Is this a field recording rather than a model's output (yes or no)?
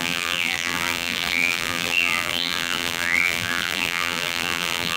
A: no